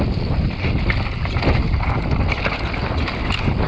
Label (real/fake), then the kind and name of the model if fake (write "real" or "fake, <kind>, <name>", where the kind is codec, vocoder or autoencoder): real